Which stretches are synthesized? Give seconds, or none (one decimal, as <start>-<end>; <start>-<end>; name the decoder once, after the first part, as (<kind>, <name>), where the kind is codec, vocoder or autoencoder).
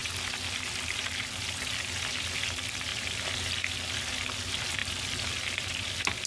none